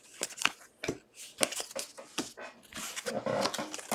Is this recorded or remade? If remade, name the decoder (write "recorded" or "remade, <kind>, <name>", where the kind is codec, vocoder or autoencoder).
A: recorded